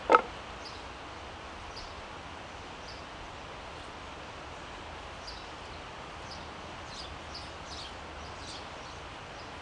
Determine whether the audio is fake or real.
real